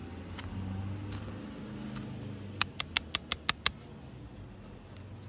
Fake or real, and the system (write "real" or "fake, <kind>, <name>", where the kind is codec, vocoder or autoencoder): real